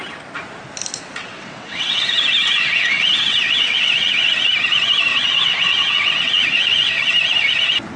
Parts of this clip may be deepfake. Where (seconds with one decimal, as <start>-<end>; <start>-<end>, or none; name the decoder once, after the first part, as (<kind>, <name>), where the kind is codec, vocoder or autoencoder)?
1.2-2.0 (vocoder, WaveNeXt); 2.4-4.3; 5.1-7.0